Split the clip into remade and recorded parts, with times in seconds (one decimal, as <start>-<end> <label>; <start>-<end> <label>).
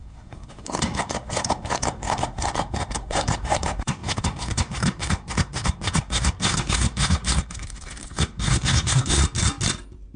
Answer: 0.0-9.2 remade; 9.2-10.2 recorded